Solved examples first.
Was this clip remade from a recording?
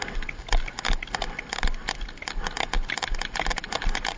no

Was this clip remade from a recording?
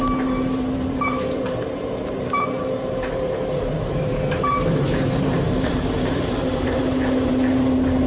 yes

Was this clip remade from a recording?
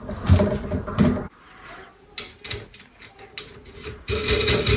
no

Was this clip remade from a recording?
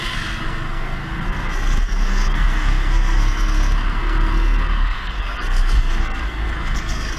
yes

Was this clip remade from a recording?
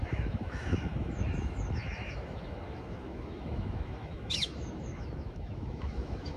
yes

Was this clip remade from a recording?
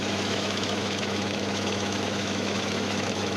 yes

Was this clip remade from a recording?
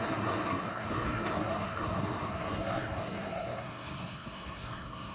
yes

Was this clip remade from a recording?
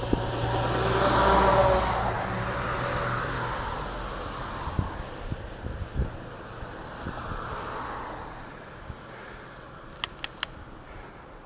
no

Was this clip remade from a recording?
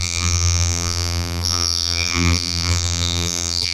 yes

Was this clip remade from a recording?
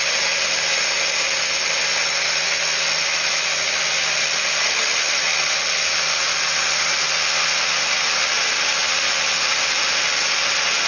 no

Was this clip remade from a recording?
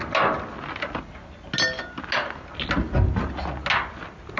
no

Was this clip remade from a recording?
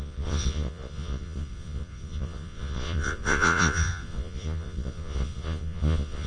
yes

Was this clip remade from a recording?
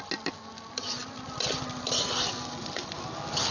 no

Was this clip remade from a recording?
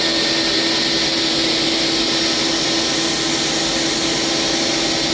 no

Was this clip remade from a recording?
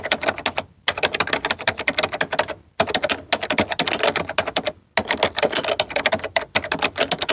no